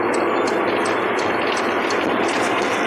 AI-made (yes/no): no